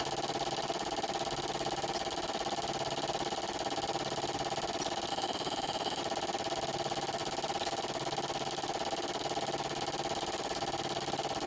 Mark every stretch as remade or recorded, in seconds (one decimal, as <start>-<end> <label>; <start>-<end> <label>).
0.0-5.1 recorded; 5.1-6.0 remade; 6.0-11.5 recorded